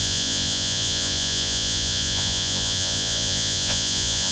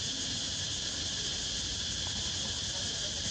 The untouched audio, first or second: second